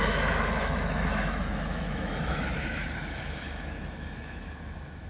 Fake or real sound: fake